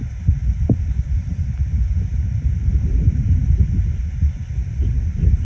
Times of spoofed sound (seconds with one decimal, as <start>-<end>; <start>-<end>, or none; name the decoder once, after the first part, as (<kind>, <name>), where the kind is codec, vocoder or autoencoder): 0.4-3.6 (vocoder, BigVGAN v2)